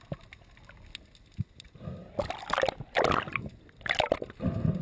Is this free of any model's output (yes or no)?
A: yes